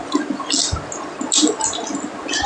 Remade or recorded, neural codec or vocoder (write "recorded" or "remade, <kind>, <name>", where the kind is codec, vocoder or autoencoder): recorded